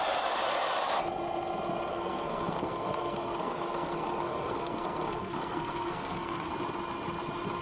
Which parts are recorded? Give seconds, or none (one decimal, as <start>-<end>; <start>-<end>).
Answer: 0.0-1.9; 6.5-7.6